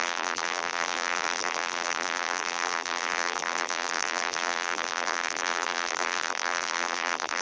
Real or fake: fake